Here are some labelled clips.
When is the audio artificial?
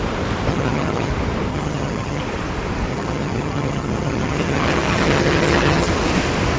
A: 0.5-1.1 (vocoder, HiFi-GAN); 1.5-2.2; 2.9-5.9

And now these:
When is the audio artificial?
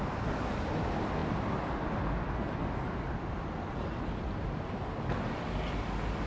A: none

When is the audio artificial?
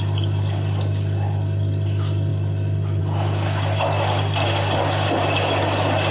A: none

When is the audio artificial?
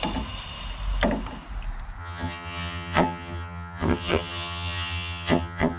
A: 2.0-5.8 (vocoder, HiFi-GAN)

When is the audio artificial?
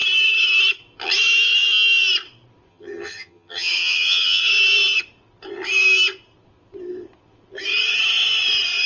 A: 2.7-4.4 (vocoder, HiFi-GAN)